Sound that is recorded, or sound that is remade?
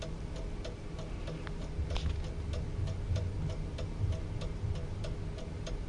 recorded